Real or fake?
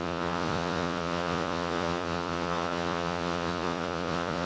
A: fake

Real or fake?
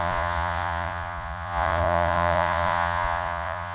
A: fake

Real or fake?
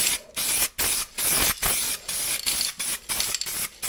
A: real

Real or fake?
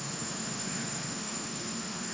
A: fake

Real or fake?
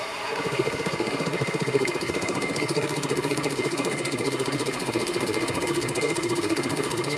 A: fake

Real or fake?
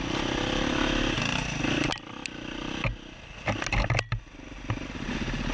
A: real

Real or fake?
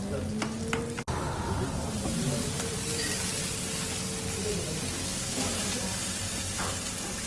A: real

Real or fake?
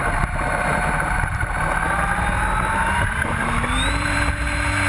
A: fake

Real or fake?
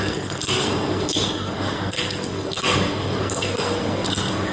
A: fake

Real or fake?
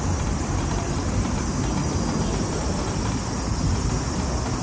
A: real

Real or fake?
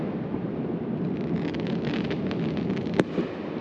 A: real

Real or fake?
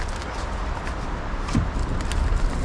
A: real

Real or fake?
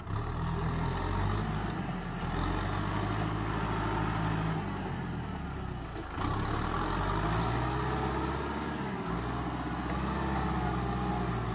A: real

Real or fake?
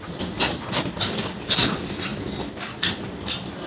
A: real